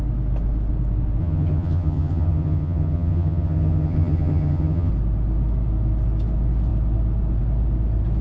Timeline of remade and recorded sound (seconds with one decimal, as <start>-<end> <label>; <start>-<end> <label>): 0.0-1.2 recorded; 1.2-4.9 remade; 4.9-8.2 recorded